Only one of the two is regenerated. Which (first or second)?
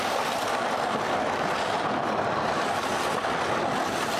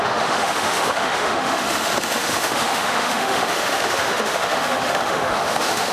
second